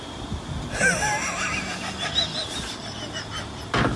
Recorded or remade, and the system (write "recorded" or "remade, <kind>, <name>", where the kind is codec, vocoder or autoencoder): recorded